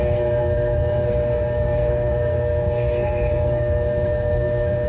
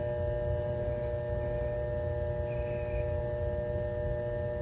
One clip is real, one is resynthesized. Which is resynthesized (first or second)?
first